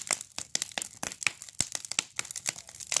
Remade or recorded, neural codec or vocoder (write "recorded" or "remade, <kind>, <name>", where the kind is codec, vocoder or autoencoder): recorded